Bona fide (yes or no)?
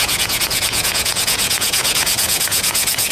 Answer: no